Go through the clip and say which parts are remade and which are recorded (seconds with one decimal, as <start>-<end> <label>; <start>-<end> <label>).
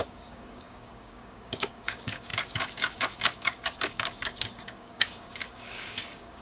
0.0-6.4 remade